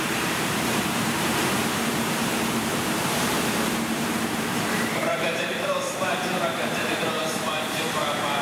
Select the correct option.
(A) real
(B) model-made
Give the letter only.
B